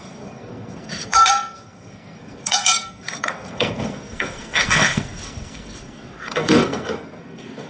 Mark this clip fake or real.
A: fake